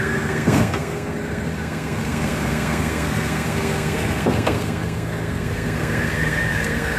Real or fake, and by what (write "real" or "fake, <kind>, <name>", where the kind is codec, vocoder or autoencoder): fake, codec, SNAC